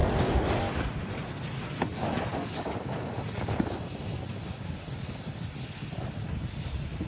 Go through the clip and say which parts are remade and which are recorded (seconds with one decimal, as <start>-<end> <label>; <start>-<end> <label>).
0.0-7.1 recorded